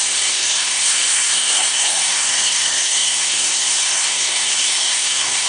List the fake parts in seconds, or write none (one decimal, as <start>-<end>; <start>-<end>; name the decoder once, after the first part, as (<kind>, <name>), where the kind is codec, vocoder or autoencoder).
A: 0.0-5.5 (codec, SNAC)